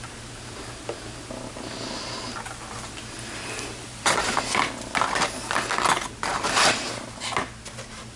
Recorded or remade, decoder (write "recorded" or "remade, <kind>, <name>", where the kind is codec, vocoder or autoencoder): recorded